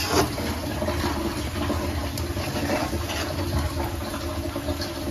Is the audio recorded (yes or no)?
yes